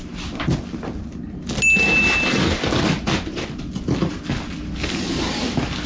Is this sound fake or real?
real